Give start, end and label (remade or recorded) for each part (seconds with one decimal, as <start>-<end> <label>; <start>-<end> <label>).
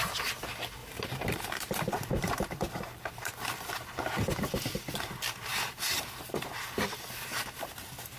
0.0-0.8 recorded; 0.8-3.3 remade; 3.3-5.5 recorded; 5.5-6.4 remade; 6.4-8.2 recorded